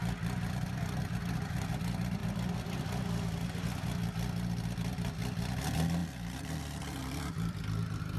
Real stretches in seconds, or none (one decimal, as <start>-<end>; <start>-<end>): 0.0-6.0; 6.6-7.0; 7.6-8.2